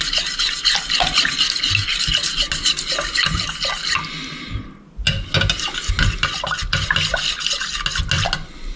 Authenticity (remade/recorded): recorded